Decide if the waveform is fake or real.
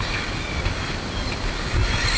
real